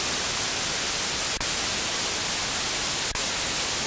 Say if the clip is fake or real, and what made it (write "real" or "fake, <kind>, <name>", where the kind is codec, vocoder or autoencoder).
real